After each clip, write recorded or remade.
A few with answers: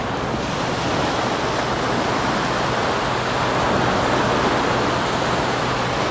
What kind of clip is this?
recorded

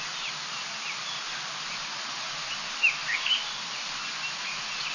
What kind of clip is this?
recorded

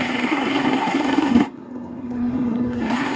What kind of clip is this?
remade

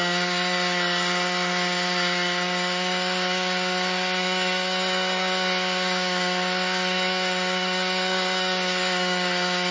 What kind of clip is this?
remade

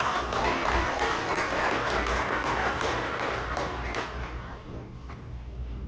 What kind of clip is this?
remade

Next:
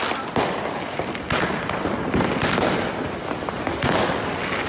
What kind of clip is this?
recorded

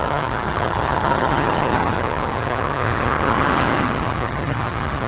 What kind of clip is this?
remade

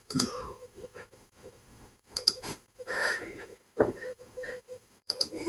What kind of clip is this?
remade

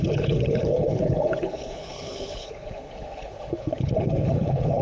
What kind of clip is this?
remade